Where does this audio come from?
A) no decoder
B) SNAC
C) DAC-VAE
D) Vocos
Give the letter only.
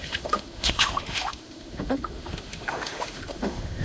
C